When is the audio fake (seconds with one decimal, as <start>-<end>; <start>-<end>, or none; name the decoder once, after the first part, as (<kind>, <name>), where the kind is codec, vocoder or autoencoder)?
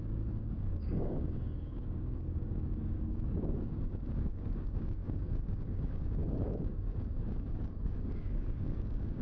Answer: 0.0-9.2 (codec, DAC)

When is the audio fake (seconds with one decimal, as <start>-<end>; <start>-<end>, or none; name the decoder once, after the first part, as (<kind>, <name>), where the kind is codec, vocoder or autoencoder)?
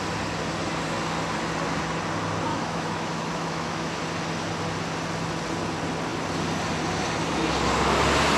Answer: 2.5-4.0 (autoencoder, DAC-VAE)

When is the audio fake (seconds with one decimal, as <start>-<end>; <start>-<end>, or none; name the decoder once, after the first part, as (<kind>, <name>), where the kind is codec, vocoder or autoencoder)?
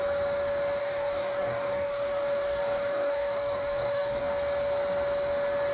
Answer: 0.8-4.2 (codec, DAC)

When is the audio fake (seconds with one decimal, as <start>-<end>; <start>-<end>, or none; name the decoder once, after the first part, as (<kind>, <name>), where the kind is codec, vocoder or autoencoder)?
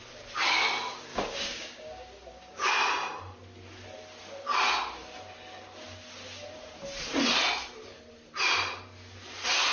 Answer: 1.1-2.7 (codec, DAC)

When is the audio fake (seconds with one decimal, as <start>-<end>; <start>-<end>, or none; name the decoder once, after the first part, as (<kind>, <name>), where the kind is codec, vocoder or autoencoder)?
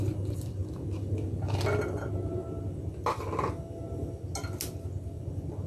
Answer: none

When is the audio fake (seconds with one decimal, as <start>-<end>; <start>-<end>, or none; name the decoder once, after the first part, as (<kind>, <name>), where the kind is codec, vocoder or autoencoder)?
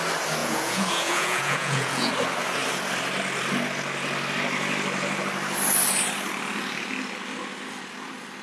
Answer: 0.4-2.1 (vocoder, Vocos)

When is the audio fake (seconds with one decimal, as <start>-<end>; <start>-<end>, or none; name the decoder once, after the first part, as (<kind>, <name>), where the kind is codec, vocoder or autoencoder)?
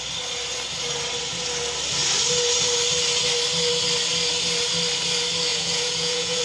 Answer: 5.5-6.4 (vocoder, Vocos)